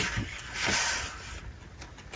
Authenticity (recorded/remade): recorded